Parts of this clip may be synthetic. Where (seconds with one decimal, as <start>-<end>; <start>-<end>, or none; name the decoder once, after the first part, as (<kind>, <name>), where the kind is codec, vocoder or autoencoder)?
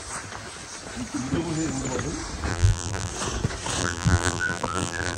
2.5-3.1 (vocoder, BigVGAN v2); 3.8-5.2